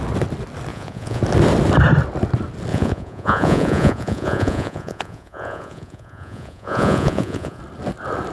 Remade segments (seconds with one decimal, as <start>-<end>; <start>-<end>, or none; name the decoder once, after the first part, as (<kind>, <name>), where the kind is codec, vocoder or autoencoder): 0.7-1.2 (vocoder, Vocos); 2.7-7.6

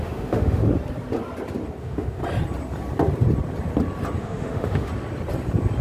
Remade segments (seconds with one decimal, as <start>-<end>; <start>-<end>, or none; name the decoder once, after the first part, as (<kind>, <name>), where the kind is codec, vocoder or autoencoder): 0.0-0.6 (autoencoder, DAC-VAE); 1.8-2.2; 4.2-4.9